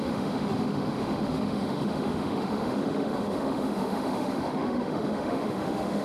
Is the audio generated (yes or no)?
yes